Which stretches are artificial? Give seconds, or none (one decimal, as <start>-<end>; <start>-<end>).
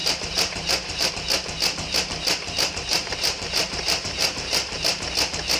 0.0-1.1; 2.9-4.7